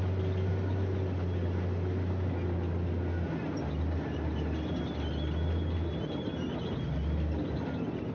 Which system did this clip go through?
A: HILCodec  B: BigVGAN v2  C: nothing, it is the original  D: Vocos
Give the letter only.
C